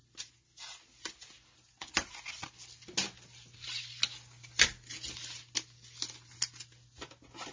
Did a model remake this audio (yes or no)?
no